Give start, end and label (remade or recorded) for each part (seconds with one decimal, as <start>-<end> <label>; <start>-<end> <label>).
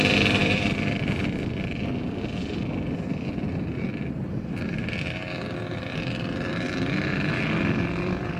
0.0-8.4 recorded